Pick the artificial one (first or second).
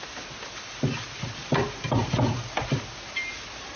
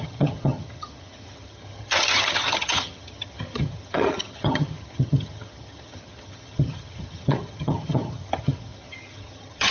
second